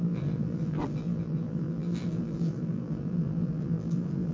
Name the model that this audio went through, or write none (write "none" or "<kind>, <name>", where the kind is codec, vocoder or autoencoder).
vocoder, BigVGAN v2